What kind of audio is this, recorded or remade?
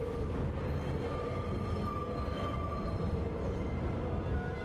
recorded